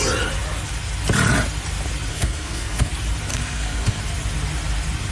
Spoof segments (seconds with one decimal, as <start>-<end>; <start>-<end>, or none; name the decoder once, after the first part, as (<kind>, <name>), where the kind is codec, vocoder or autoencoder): 2.1-2.9 (codec, SNAC); 3.3-4.0